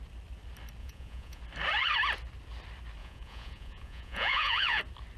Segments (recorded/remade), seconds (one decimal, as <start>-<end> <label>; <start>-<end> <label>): 0.0-0.8 recorded; 0.8-1.4 remade; 1.4-3.0 recorded; 3.0-4.8 remade; 4.8-5.2 recorded

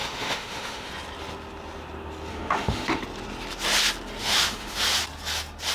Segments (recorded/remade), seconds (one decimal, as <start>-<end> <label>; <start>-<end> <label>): 0.0-0.9 remade; 0.9-2.3 recorded; 2.3-3.0 remade; 3.0-4.2 recorded; 4.2-4.8 remade; 4.8-5.7 recorded

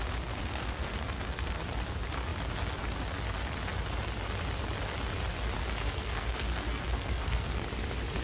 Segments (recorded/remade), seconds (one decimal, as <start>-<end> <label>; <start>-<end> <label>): 0.0-0.4 recorded; 0.4-1.6 remade; 1.6-5.6 recorded; 5.6-7.6 remade; 7.6-8.2 recorded